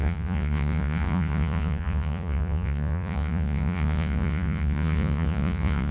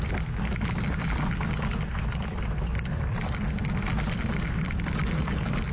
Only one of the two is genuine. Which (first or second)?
second